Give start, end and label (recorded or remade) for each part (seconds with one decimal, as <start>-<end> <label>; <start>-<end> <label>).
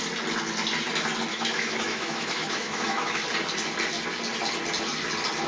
0.0-1.3 recorded; 1.3-3.2 remade; 3.2-5.5 recorded